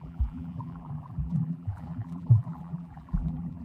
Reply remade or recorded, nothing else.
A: remade